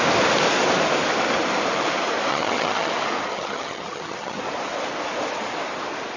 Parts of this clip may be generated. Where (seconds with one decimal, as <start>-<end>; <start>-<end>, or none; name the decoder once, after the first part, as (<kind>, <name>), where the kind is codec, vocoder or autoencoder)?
2.3-2.9 (vocoder, HiFi-GAN); 3.3-4.4